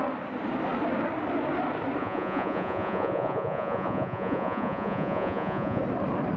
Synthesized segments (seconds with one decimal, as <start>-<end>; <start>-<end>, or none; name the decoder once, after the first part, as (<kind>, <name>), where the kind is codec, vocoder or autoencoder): 2.0-5.8 (vocoder, Vocos)